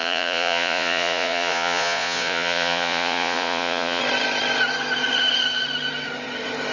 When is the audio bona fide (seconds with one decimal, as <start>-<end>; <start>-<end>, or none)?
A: 4.0-6.7

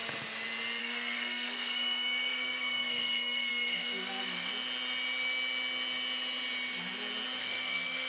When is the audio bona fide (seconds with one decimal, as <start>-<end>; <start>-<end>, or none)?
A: 0.0-0.8; 4.5-7.4

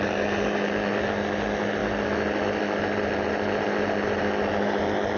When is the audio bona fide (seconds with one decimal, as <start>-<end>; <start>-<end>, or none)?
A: 0.0-5.2

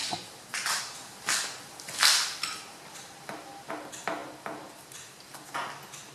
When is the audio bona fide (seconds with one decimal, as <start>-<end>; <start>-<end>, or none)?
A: 3.7-6.1

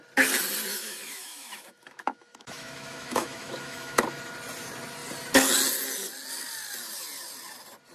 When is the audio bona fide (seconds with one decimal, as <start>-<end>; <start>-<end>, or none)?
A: 0.0-0.7; 4.0-7.9

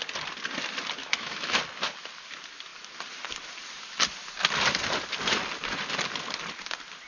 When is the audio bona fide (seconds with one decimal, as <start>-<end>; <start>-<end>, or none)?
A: 0.0-1.0; 1.6-7.1

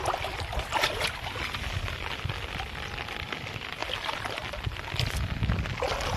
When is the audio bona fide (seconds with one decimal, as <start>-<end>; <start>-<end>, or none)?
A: 0.0-6.2

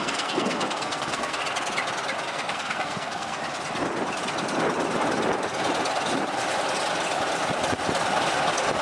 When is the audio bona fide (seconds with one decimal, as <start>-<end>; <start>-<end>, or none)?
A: 1.4-2.2; 3.4-8.8